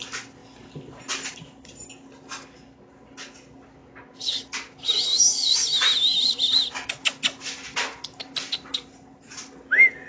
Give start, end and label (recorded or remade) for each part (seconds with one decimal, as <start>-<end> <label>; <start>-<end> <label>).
0.0-10.1 recorded